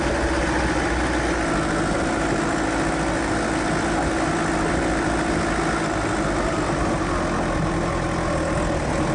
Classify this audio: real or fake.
real